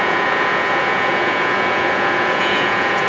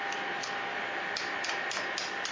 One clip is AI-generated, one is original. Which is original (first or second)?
second